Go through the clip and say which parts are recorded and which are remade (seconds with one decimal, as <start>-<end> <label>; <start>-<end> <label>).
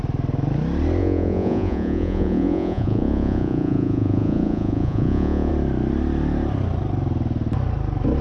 0.0-1.0 recorded; 1.0-5.5 remade; 5.5-8.2 recorded